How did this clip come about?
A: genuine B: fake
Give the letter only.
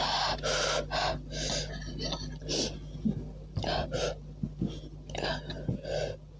A